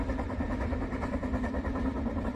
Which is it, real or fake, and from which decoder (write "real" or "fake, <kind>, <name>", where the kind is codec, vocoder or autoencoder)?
real